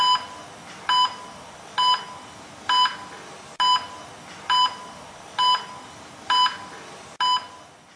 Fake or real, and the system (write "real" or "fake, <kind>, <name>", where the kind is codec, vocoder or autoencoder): real